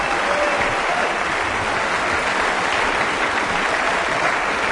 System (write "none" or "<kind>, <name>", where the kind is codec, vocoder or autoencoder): none